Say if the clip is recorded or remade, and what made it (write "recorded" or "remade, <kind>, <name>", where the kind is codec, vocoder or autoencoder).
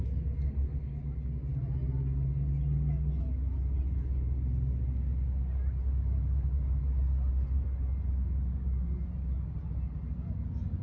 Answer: recorded